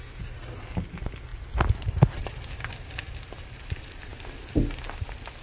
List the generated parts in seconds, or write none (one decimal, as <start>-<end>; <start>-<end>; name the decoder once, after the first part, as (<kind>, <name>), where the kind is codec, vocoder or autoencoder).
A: 1.3-2.7 (vocoder, BigVGAN v2)